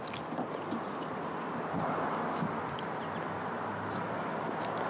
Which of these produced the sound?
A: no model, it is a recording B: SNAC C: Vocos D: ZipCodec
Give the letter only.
A